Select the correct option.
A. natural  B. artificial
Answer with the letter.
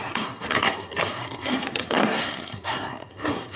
B